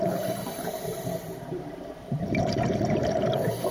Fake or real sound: fake